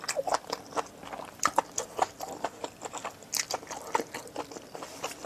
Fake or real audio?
real